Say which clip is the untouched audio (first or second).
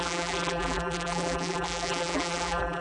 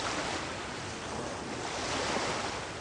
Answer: second